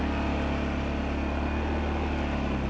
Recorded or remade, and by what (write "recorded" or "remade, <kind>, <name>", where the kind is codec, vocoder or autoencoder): recorded